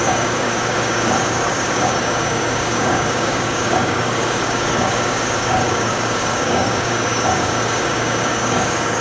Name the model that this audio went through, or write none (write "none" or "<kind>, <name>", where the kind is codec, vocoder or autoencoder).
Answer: codec, DAC